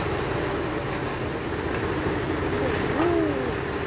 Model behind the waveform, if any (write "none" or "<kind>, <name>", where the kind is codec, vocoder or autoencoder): none